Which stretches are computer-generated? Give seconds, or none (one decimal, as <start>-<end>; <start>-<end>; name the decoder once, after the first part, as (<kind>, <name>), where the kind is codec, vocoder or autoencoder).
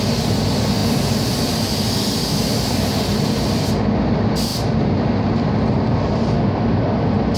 none